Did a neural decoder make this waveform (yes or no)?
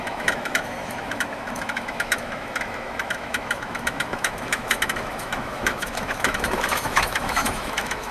yes